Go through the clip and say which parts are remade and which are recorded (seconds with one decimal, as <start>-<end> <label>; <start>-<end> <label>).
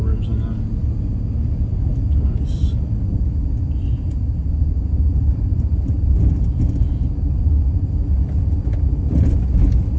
0.0-4.1 recorded; 4.1-6.3 remade; 6.3-10.0 recorded